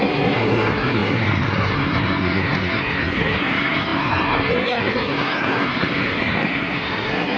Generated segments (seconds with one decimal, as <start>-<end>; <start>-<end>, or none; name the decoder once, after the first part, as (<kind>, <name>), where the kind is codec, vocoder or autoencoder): 0.0-7.4 (codec, SNAC)